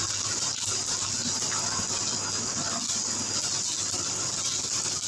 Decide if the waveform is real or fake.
real